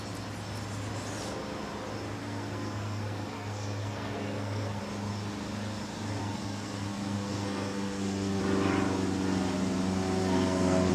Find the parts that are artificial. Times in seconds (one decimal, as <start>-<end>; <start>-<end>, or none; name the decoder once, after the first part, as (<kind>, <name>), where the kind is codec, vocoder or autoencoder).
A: 2.2-4.8 (codec, SNAC); 6.2-8.4; 10.2-10.9